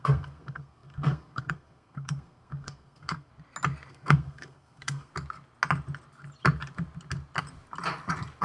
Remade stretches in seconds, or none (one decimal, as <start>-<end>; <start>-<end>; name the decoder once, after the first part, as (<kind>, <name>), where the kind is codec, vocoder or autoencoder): 0.0-3.3 (codec, SNAC); 3.9-5.1